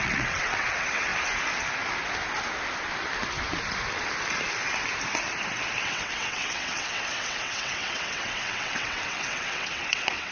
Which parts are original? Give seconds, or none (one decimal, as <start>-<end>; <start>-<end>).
1.1-5.8